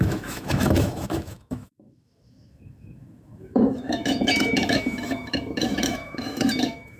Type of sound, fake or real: fake